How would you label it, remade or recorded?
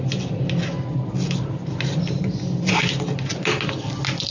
recorded